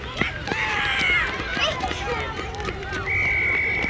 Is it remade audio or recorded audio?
recorded